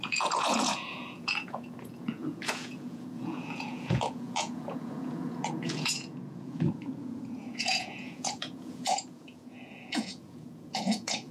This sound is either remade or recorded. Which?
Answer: remade